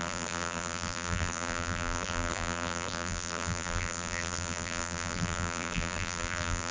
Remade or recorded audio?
remade